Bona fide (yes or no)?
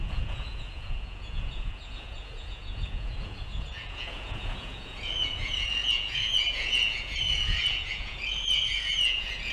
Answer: no